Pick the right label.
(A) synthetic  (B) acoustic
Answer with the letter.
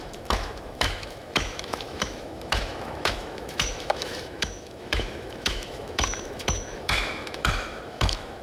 A